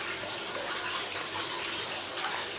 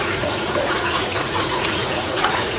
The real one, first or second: first